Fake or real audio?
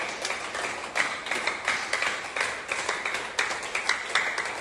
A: real